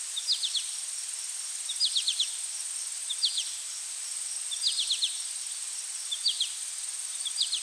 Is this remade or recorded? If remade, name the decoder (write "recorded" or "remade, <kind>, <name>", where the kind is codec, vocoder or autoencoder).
recorded